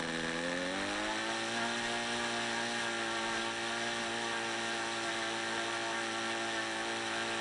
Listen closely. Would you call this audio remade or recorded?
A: recorded